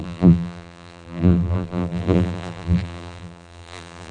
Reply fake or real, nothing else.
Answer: fake